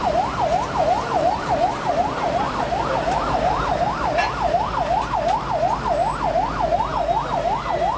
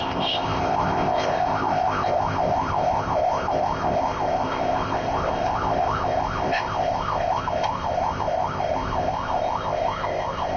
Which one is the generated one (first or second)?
second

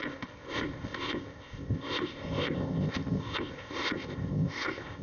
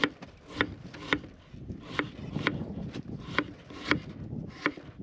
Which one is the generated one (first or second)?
first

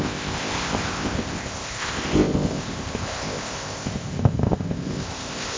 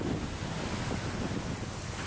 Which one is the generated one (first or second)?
first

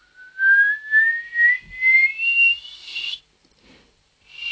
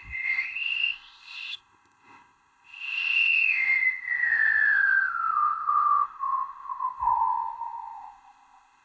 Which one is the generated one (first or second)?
second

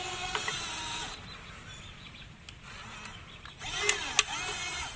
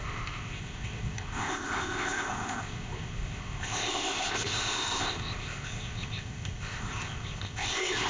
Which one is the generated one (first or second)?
second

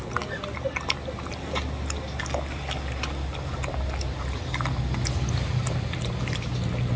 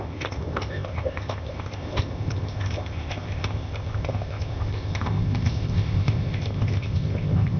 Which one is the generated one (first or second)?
second